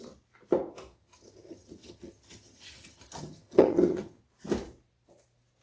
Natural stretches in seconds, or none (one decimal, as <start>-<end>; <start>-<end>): 0.0-0.9; 4.2-5.6